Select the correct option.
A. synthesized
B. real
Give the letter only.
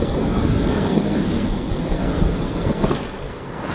A